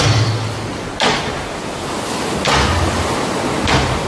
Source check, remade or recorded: recorded